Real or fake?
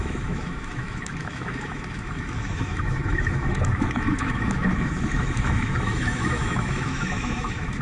fake